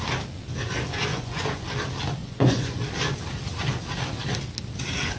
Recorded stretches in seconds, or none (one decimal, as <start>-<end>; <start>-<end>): 0.0-1.1; 1.7-2.2; 2.8-5.2